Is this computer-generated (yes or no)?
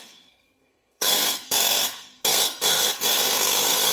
yes